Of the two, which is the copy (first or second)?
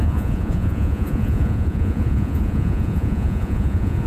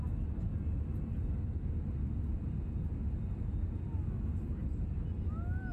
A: first